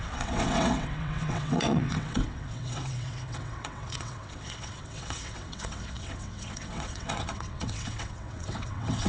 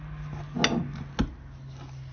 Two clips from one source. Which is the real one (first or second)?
second